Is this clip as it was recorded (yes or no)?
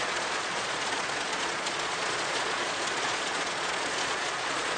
no